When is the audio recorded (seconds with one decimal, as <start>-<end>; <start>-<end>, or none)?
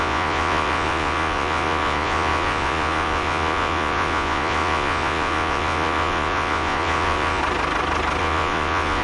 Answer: 7.4-8.2